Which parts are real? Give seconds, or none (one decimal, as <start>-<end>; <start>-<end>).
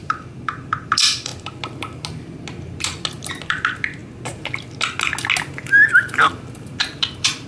1.3-3.3; 4.0-5.5